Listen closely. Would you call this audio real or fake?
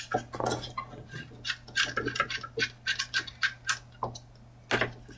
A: real